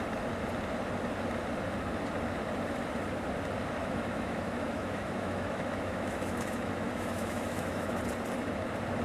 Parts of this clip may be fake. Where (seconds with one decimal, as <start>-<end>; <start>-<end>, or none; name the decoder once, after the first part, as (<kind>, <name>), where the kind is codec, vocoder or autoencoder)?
3.8-8.0 (autoencoder, DAC-VAE)